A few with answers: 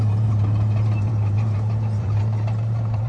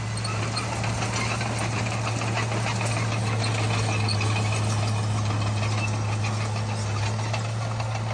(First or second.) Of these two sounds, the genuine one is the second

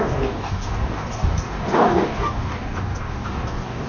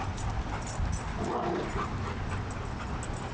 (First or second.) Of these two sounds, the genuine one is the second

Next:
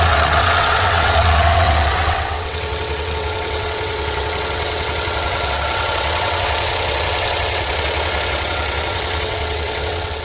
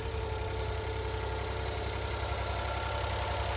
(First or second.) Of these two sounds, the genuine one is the second